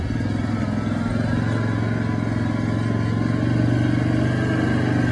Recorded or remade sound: recorded